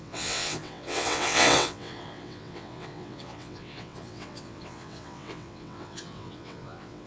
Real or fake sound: fake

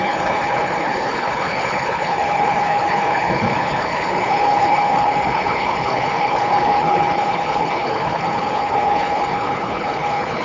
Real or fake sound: fake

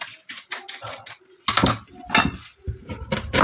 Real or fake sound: real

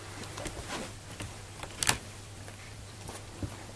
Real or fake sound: fake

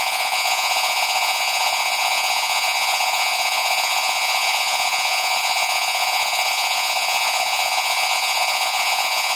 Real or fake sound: fake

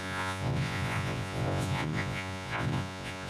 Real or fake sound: fake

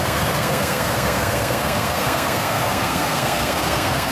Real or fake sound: fake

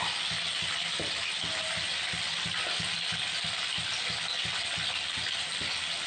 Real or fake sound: real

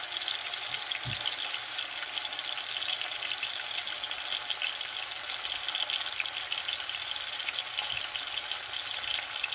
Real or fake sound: real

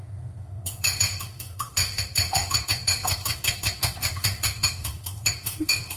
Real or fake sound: fake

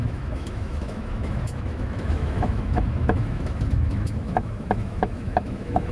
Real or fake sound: fake